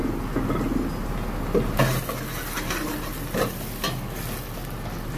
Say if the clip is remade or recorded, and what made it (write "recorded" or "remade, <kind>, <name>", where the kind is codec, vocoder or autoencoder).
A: recorded